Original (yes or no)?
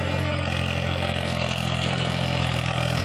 no